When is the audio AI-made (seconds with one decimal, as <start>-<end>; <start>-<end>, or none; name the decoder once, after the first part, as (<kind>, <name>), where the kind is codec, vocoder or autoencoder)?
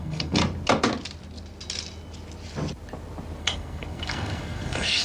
0.0-0.4 (codec, SNAC); 3.4-5.0